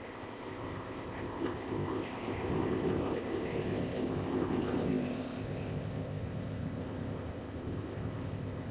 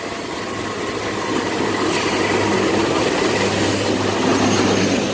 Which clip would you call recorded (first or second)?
second